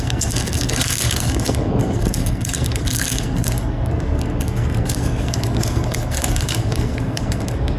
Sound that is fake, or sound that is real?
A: fake